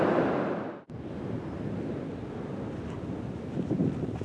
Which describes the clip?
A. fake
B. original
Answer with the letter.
B